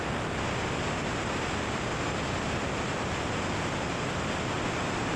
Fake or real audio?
real